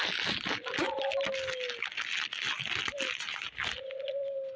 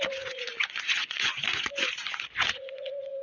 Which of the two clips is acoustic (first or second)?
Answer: first